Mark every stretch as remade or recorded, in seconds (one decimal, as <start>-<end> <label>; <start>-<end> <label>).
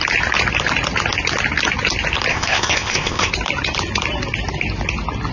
0.0-2.3 recorded; 2.3-3.3 remade; 3.3-5.3 recorded